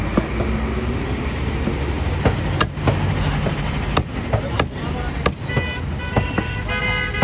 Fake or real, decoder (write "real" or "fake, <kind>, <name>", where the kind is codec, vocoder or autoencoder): real